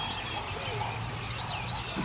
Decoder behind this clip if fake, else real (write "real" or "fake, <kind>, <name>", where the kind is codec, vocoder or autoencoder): real